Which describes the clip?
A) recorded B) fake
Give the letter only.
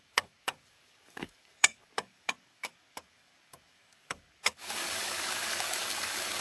B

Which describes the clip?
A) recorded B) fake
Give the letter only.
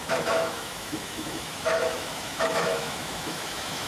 B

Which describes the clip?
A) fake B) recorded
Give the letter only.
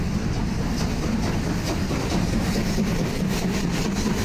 B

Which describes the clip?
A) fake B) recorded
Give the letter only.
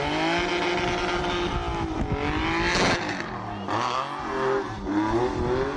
B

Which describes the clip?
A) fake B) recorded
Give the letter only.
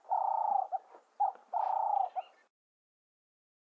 B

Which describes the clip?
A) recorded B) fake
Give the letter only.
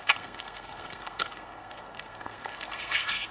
B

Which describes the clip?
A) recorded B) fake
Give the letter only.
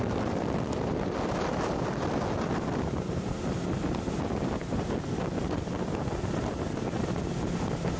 A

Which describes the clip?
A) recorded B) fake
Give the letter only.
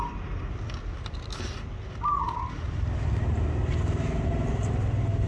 A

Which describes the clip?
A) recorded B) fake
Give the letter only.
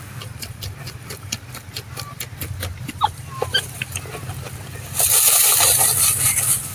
B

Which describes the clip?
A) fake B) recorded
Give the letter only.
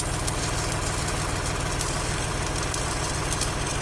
A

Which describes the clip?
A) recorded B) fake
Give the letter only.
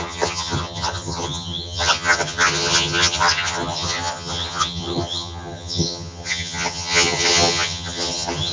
B